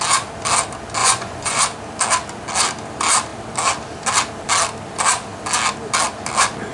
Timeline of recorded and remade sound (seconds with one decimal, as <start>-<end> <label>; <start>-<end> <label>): 0.0-1.0 recorded; 1.0-1.6 remade; 1.6-6.7 recorded